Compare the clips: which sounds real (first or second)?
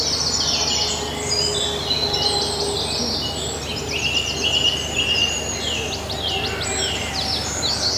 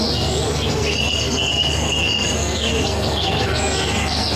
first